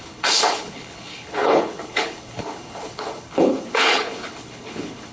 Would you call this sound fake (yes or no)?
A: yes